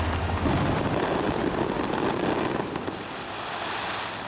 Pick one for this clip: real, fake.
real